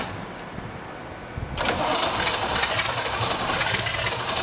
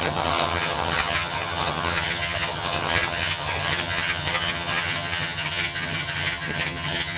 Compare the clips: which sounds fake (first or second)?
second